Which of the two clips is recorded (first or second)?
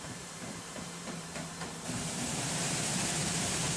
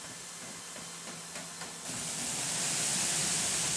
second